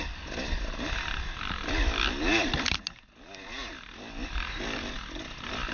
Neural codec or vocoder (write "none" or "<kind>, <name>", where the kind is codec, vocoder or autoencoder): none